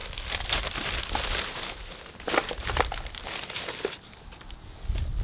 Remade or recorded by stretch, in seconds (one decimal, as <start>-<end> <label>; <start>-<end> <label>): 0.0-5.2 recorded